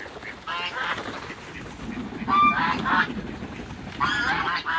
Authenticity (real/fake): real